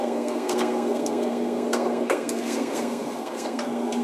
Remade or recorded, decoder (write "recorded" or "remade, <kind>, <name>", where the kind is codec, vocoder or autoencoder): remade, codec, SNAC